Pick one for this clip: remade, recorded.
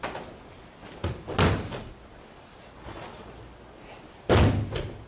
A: recorded